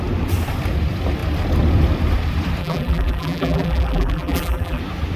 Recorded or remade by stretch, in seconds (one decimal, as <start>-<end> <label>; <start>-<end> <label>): 0.0-2.6 recorded; 2.6-4.8 remade; 4.8-5.2 recorded